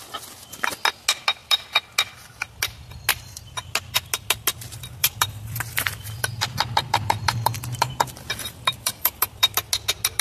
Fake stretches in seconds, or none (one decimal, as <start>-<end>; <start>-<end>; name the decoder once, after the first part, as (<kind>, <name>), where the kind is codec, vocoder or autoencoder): 5.0-9.5 (vocoder, BigVGAN v2)